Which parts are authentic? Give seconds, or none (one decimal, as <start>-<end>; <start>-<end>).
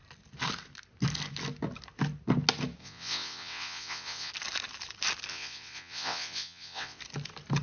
0.0-2.8; 4.3-5.3; 7.0-7.6